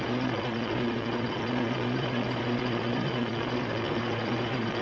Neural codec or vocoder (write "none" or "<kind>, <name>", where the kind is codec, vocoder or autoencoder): vocoder, Vocos